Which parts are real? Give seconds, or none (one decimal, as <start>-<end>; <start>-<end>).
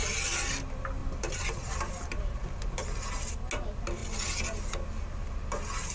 0.0-1.0; 3.3-5.9